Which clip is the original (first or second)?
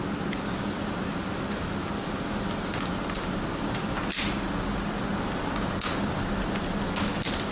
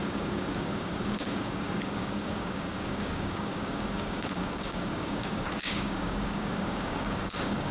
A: first